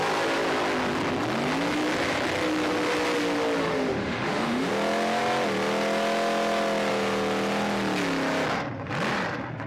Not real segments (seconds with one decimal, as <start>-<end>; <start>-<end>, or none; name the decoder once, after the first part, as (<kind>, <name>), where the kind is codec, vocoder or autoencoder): 3.6-4.7 (autoencoder, DAC-VAE)